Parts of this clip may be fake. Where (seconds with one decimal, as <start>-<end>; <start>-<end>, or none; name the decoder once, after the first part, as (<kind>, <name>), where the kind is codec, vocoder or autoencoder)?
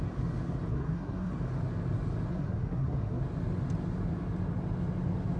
0.7-1.3 (codec, SNAC); 2.3-3.2